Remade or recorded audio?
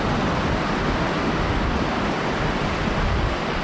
recorded